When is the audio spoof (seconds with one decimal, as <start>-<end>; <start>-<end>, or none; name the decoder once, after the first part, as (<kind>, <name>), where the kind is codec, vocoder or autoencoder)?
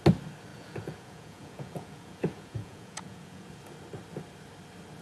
0.5-3.5 (vocoder, Vocos)